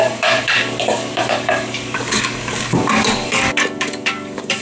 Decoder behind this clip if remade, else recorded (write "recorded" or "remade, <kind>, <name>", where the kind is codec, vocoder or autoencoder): remade, codec, DAC